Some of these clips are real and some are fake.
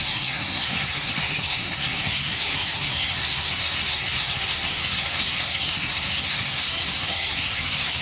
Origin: fake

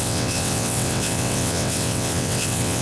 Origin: fake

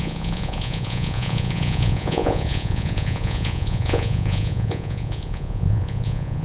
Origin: fake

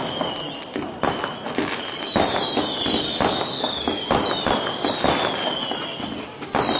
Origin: real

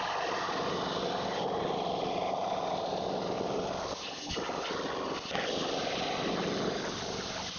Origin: real